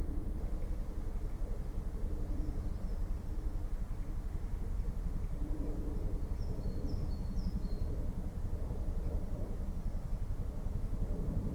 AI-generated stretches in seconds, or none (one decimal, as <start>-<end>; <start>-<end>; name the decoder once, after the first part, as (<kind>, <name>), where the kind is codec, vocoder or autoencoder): 0.0-5.8 (vocoder, BigVGAN v2); 7.1-11.5